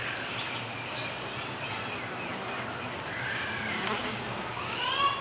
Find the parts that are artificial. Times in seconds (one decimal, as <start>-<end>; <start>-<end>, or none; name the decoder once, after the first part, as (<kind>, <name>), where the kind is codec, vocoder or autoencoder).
4.0-4.8 (codec, DAC)